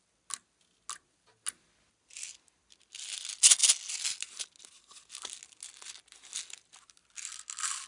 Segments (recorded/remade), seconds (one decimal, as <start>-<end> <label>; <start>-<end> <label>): 0.0-7.9 recorded